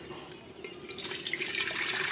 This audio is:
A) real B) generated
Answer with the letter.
A